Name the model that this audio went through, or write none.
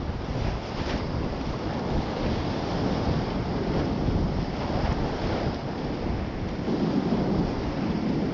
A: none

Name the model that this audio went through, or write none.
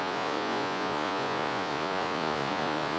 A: vocoder, Vocos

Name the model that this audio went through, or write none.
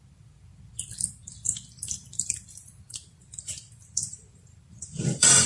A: vocoder, BigVGAN v2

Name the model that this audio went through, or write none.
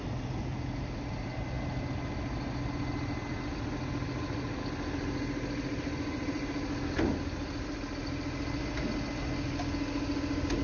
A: none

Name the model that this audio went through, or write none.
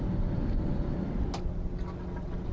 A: none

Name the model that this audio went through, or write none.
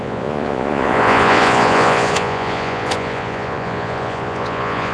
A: vocoder, Vocos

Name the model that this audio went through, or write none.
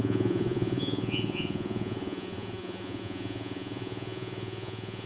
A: vocoder, Vocos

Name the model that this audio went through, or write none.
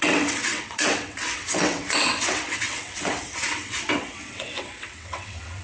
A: vocoder, WaveNeXt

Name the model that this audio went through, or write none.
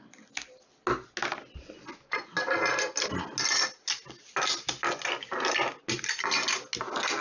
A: none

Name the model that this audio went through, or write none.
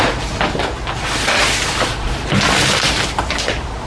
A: none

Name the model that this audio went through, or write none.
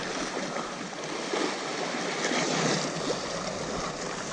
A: none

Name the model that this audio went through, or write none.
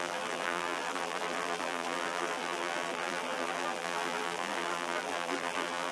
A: vocoder, BigVGAN v2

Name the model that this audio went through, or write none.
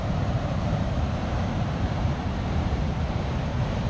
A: vocoder, BigVGAN v2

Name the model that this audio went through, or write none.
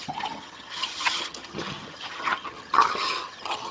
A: vocoder, HiFi-GAN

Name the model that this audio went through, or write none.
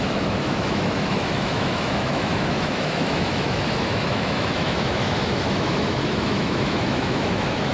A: autoencoder, DAC-VAE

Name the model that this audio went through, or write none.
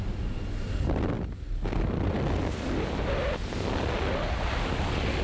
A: none